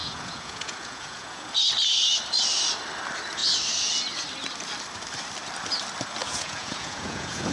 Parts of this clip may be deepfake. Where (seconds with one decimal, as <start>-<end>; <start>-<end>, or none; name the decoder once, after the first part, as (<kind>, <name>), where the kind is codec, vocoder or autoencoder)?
0.0-1.5 (vocoder, Vocos); 6.2-7.5